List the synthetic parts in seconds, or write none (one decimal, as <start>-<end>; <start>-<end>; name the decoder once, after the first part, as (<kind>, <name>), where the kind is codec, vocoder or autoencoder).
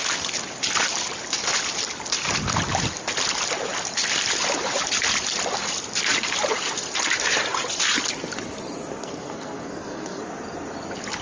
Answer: 9.0-10.2 (codec, SNAC)